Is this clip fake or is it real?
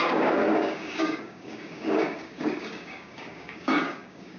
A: fake